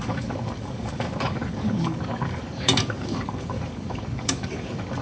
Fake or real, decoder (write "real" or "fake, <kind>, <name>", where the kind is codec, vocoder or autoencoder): fake, codec, DAC